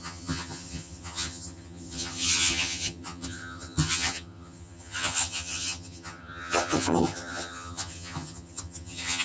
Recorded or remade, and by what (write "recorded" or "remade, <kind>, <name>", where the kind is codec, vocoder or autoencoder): remade, vocoder, HiFi-GAN